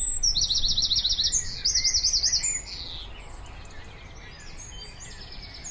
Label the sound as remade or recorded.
recorded